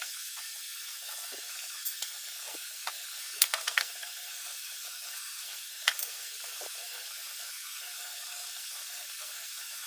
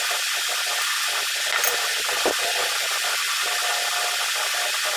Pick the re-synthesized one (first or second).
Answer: first